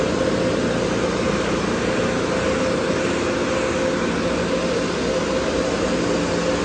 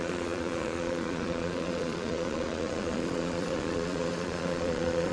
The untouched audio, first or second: first